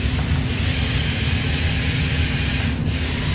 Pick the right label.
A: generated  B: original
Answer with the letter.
B